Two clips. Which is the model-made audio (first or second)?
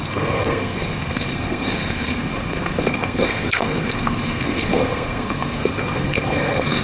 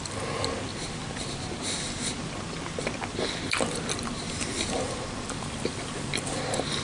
first